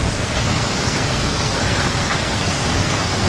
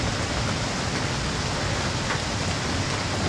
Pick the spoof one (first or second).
first